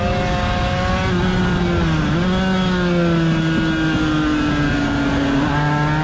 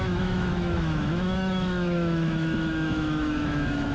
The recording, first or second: first